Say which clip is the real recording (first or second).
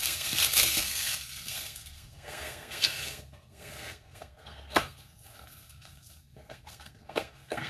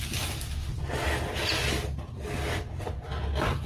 second